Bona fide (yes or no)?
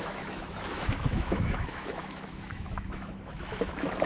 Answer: no